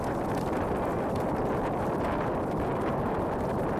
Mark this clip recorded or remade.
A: recorded